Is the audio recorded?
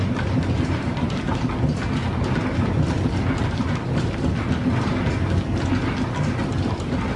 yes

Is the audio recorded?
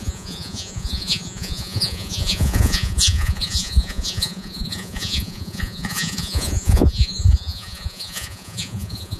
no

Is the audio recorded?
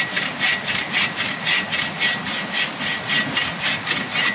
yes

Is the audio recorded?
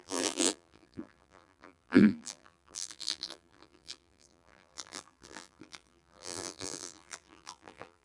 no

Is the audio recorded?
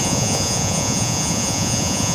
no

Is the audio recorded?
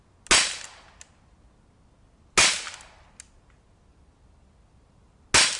yes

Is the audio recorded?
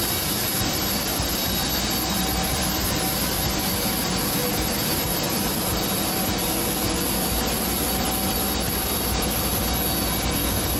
yes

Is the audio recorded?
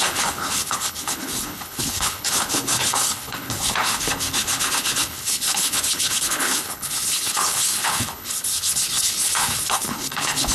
no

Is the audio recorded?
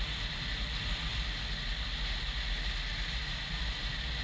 yes